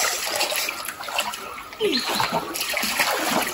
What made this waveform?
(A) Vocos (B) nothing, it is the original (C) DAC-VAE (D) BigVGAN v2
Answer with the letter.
B